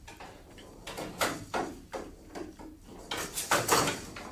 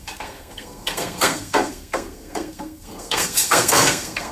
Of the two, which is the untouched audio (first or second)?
first